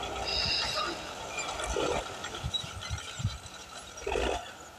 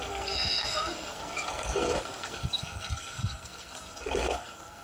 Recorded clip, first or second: first